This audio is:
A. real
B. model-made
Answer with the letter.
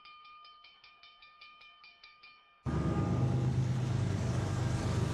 B